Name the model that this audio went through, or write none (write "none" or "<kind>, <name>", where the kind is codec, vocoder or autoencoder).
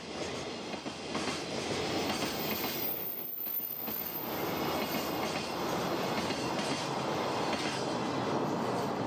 none